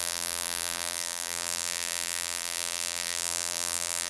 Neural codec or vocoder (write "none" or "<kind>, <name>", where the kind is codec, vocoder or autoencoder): vocoder, BigVGAN v2